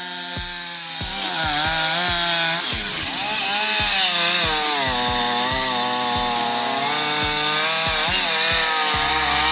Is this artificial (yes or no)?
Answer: no